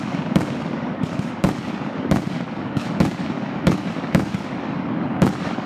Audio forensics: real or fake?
fake